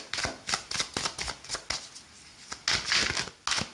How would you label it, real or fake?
real